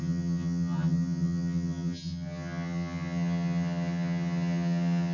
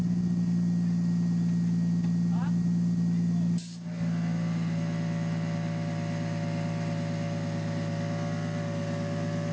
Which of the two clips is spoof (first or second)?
first